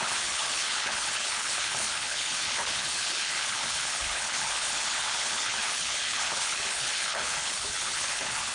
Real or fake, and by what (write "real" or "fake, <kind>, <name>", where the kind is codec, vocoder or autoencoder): fake, codec, HILCodec